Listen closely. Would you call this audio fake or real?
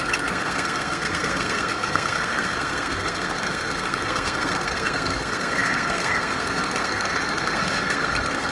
fake